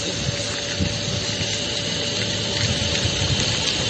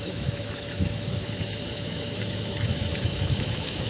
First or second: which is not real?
second